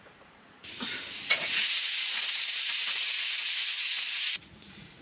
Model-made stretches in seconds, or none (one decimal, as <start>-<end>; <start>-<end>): 0.0-5.0